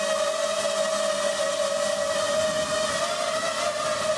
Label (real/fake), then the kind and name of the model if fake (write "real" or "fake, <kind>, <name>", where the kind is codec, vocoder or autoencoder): real